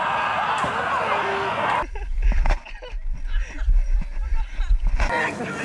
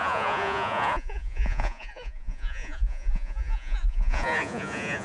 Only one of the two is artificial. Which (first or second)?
second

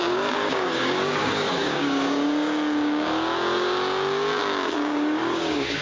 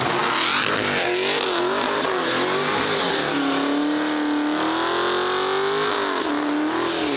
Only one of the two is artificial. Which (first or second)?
first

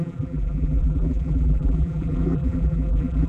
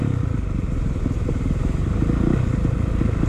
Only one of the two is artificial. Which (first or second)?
first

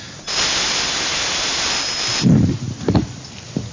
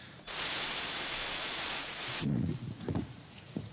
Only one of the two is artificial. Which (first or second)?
second